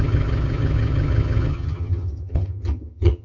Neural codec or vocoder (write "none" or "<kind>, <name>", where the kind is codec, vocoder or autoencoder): vocoder, HiFi-GAN